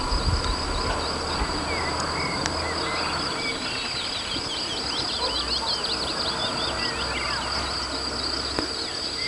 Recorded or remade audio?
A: recorded